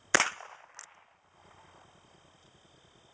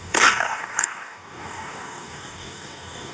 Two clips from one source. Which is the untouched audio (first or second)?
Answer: first